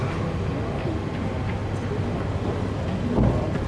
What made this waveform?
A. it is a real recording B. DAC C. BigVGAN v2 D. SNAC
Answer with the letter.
A